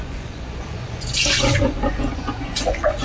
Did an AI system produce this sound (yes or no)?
yes